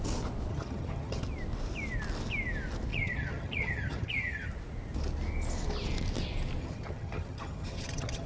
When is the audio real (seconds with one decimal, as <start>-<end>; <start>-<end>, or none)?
0.0-0.5; 1.2-2.9; 4.5-6.6